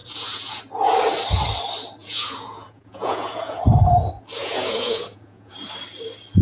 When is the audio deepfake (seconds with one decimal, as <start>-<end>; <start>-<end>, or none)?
0.0-0.6; 2.0-3.6; 4.4-5.5